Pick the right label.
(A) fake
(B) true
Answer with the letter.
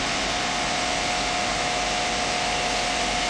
B